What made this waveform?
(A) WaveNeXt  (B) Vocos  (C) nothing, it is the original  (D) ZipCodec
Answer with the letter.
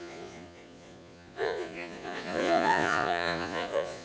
B